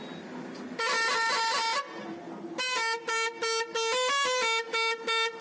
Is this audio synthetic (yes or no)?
no